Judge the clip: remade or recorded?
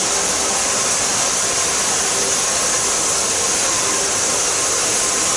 recorded